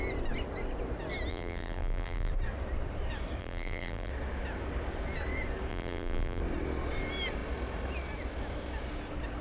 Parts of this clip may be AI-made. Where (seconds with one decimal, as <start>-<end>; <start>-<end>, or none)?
1.3-2.3; 3.4-4.1; 5.7-6.4